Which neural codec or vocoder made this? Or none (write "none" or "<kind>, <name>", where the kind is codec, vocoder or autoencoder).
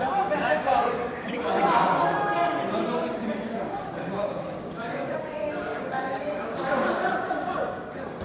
codec, DAC